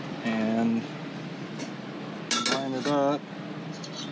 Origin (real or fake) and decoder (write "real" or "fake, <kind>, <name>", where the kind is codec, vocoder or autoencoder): real